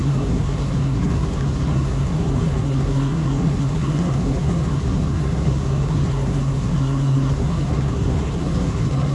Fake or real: fake